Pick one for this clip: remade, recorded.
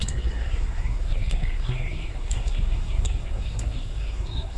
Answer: remade